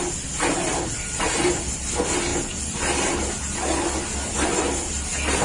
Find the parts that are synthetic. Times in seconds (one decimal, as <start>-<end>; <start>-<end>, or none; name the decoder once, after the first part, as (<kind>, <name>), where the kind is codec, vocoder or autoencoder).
none